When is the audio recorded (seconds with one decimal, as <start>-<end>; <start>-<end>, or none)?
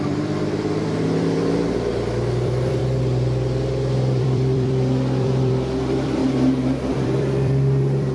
2.8-4.2; 6.2-6.9